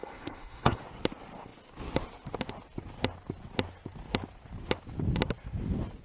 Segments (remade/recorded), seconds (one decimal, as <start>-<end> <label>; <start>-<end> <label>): 0.0-0.8 remade; 0.8-6.0 recorded